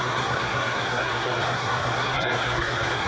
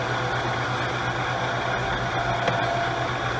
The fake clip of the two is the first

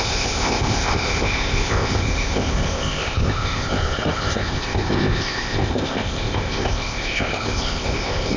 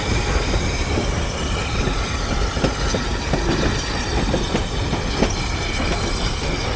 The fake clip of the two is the first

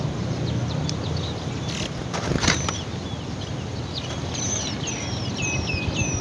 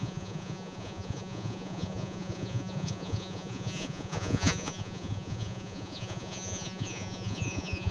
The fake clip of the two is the second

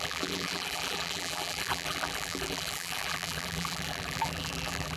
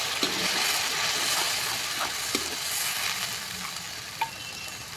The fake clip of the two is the first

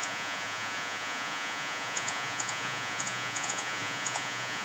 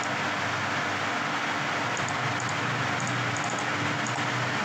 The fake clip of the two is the first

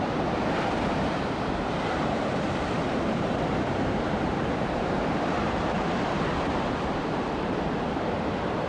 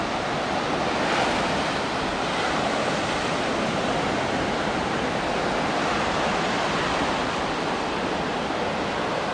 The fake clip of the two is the first